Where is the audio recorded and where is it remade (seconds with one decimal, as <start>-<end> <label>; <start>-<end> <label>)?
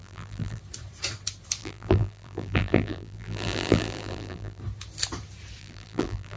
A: 0.0-0.6 remade; 0.6-1.6 recorded; 1.6-4.6 remade; 4.6-5.6 recorded; 5.6-6.4 remade